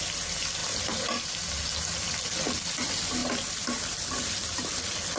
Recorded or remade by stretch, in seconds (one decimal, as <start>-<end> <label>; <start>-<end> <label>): 0.0-0.6 recorded; 0.6-1.3 remade; 1.3-5.2 recorded